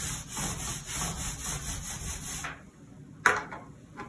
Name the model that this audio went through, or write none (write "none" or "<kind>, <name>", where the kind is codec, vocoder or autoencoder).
none